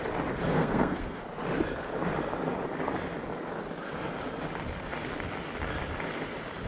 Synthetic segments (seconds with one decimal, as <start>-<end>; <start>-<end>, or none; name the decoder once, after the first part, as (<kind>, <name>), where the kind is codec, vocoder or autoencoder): 0.5-1.2 (codec, SNAC)